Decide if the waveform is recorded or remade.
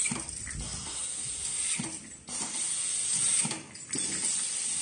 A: recorded